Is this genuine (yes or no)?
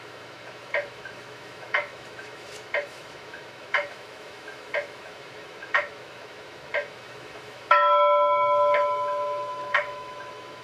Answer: no